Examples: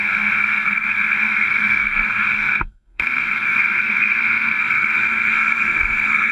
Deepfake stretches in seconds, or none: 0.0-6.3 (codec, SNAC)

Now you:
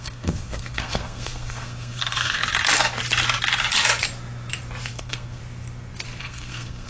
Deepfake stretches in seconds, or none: 0.0-2.4 (codec, SNAC); 4.9-5.4; 6.2-6.9

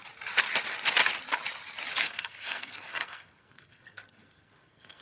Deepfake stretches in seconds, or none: 2.0-5.0 (codec, SNAC)